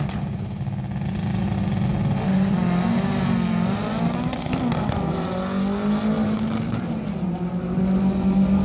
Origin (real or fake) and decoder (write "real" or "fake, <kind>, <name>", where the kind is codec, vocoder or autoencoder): real